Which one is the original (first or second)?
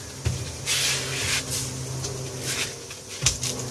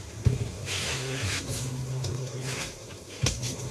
first